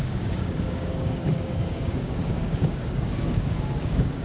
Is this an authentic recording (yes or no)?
no